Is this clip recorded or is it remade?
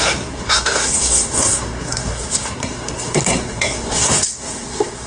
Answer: remade